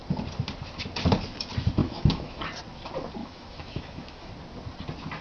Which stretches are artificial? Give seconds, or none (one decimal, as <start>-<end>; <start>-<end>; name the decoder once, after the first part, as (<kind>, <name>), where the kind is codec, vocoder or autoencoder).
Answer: 1.8-2.4 (autoencoder, DAC-VAE); 3.2-4.3